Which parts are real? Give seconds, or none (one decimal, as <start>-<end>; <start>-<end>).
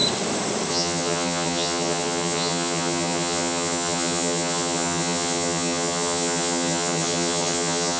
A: 0.0-0.7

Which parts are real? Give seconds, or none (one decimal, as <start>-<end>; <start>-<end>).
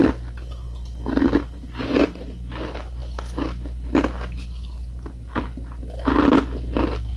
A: 0.0-7.2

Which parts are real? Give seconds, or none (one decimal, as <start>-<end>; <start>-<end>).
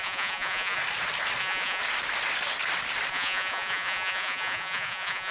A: 0.8-1.4; 1.8-3.1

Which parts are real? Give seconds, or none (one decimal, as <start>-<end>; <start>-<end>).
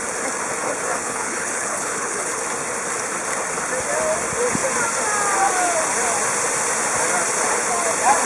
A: 0.0-1.0; 2.4-8.3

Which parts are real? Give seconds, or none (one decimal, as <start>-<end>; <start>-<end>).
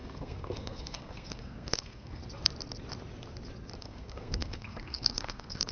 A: 2.2-3.8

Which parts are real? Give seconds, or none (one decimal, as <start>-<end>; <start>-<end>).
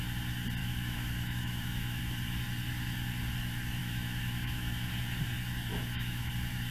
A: 0.0-0.6; 2.0-3.8; 4.9-5.7; 6.3-6.7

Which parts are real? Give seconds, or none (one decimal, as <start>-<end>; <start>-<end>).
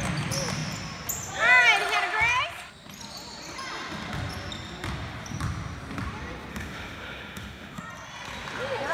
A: 0.0-6.5; 7.8-8.9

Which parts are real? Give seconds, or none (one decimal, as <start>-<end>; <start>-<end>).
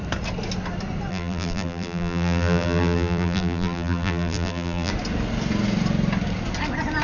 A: 0.0-1.1; 4.9-7.0